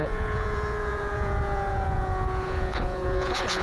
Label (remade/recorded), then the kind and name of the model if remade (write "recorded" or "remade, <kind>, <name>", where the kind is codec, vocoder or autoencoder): remade, vocoder, Vocos